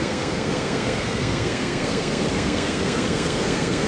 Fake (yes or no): yes